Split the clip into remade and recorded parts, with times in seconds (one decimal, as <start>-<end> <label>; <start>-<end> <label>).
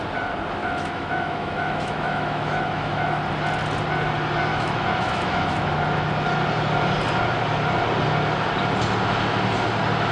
0.0-0.6 recorded; 0.6-3.2 remade; 3.2-4.5 recorded; 4.5-5.7 remade; 5.7-10.1 recorded